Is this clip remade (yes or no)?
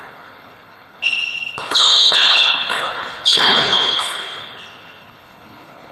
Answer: yes